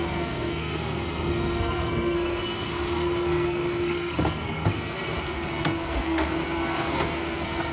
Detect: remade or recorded remade